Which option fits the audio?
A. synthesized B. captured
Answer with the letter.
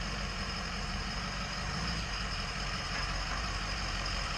A